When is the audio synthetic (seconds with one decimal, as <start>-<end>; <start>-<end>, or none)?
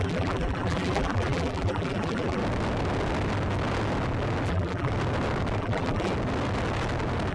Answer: 0.0-2.4; 4.5-4.9; 5.6-6.1